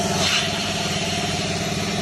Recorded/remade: remade